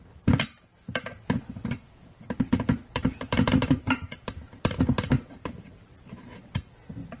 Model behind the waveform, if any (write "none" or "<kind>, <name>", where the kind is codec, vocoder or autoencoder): vocoder, BigVGAN v2